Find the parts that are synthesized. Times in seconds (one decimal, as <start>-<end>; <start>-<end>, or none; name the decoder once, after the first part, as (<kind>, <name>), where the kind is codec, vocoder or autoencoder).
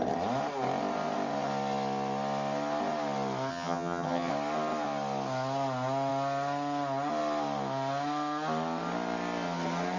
3.5-4.3 (vocoder, HiFi-GAN)